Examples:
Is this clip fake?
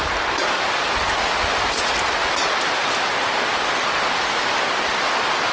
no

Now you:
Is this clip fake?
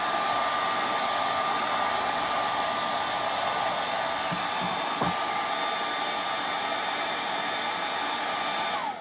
no